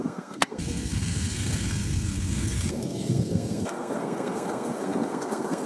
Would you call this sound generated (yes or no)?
yes